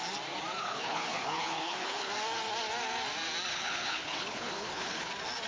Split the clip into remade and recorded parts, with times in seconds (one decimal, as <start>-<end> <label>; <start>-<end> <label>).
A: 0.0-0.6 recorded; 0.6-2.1 remade; 2.1-3.5 recorded; 3.5-5.1 remade; 5.1-5.5 recorded